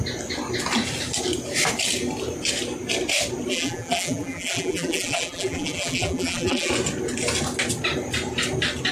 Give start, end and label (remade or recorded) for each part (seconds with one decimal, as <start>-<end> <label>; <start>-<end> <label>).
0.0-3.5 recorded; 3.5-6.7 remade; 6.7-8.9 recorded